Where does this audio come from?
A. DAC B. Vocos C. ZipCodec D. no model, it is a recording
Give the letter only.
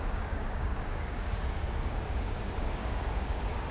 A